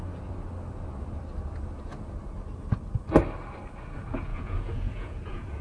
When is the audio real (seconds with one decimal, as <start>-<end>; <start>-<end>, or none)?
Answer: 0.0-4.3